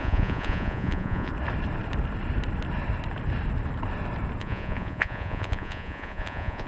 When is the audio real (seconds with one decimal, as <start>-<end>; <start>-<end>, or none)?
1.3-4.4